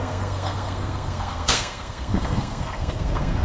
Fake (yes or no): yes